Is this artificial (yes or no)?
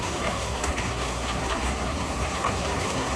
yes